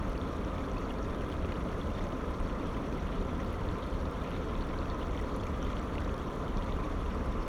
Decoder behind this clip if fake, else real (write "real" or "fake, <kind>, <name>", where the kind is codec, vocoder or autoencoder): fake, vocoder, BigVGAN v2